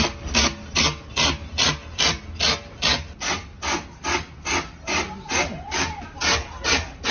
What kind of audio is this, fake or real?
real